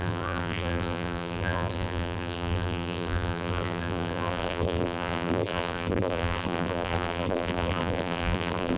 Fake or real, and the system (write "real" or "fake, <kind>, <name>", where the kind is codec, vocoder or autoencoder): fake, vocoder, BigVGAN v2